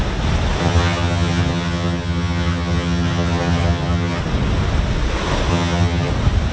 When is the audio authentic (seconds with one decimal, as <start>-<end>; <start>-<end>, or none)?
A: 0.0-0.6; 4.2-5.5; 6.1-6.5